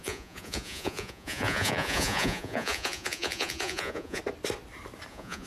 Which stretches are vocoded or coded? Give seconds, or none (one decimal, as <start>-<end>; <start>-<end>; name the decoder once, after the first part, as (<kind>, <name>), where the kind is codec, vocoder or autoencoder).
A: 0.0-4.2 (vocoder, Vocos); 5.1-5.5